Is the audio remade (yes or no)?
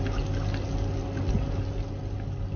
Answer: no